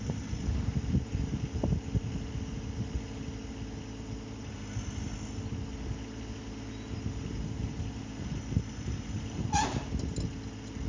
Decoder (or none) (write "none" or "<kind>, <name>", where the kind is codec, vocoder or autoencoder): none